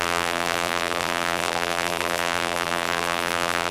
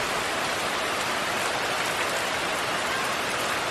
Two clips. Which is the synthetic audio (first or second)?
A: first